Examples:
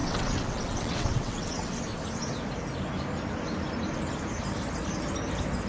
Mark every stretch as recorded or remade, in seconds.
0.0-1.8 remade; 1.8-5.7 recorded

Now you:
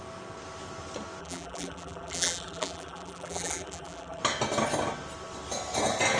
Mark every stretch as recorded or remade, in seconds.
0.0-1.2 recorded; 1.2-4.2 remade; 4.2-6.2 recorded

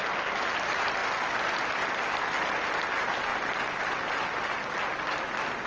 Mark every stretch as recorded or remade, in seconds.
0.0-5.7 recorded

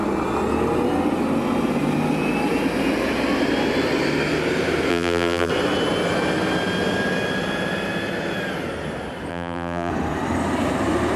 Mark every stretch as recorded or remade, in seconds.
0.0-4.9 recorded; 4.9-5.5 remade; 5.5-9.3 recorded; 9.3-9.9 remade; 9.9-11.2 recorded